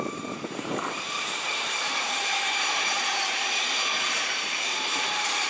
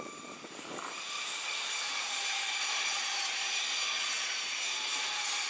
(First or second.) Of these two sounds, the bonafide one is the second